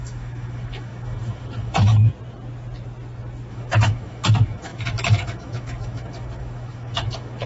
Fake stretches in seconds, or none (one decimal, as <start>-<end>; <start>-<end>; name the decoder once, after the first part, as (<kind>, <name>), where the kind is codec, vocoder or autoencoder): 0.0-2.1 (autoencoder, DAC-VAE); 3.5-7.5